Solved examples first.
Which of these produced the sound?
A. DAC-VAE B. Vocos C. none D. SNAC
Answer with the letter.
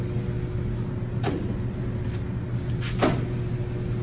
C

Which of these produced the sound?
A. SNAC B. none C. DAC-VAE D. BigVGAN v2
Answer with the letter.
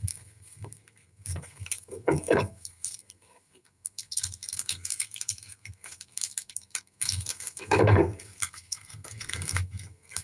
A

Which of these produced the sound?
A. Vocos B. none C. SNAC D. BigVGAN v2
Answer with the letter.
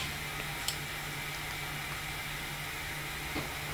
B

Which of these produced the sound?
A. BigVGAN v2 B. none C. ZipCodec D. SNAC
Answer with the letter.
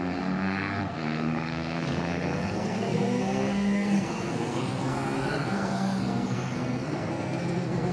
D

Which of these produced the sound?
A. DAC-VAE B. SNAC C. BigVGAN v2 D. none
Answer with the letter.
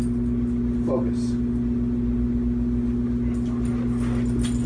D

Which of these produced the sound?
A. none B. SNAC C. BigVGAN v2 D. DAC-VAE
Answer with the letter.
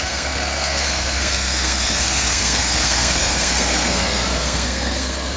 B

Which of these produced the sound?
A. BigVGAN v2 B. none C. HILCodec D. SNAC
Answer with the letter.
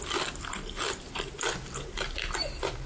B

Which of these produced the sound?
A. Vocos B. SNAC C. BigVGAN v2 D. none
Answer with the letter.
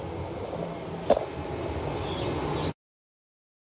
D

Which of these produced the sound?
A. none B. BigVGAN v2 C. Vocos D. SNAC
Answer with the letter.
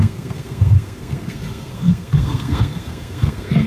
D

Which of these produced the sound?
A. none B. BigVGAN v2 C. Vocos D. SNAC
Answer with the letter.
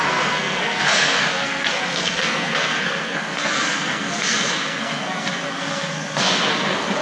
D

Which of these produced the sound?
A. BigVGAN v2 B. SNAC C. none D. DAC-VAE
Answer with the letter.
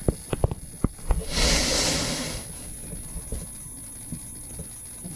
C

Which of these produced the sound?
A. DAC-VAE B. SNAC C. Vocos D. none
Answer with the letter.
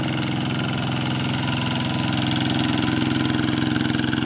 D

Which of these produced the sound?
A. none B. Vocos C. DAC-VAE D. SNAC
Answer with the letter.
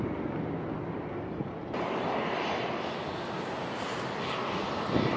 A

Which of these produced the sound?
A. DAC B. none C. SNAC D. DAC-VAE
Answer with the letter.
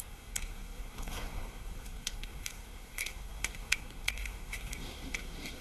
C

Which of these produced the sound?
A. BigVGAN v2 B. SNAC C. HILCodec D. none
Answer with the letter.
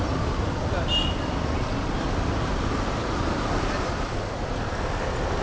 D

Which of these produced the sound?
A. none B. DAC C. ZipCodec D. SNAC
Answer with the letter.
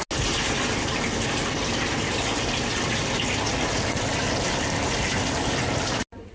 A